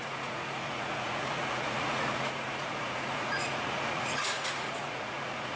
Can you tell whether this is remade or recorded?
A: remade